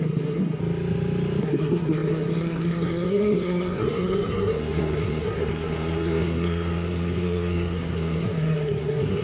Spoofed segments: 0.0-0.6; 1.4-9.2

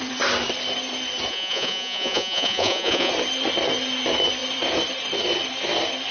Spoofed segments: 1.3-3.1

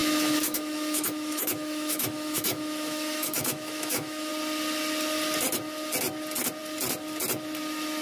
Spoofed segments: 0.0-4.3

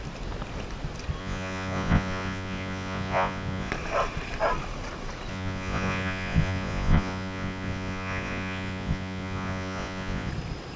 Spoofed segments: 1.2-3.7; 5.3-10.3

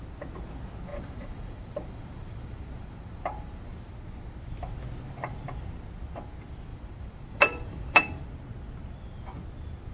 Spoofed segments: 0.9-3.9; 6.7-8.2